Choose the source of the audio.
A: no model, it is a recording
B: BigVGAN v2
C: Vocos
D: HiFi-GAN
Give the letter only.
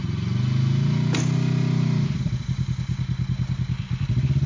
A